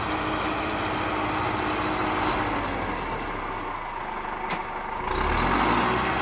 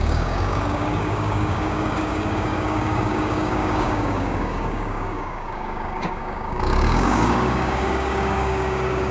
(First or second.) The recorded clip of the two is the first